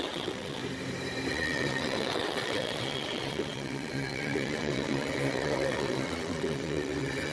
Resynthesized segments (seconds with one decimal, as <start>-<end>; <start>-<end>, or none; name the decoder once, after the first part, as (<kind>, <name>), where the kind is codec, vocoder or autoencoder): 0.0-0.6 (vocoder, WaveNeXt); 1.3-7.3